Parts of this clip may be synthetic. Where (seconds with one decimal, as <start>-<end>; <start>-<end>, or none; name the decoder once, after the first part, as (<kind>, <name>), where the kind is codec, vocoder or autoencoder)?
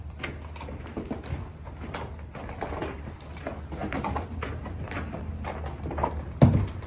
2.8-3.4 (vocoder, BigVGAN v2); 3.8-5.3